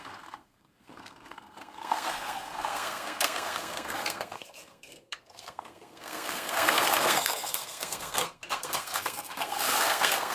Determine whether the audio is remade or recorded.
remade